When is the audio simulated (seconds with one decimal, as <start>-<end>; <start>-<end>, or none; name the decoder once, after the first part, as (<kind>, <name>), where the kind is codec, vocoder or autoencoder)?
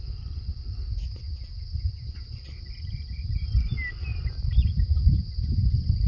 none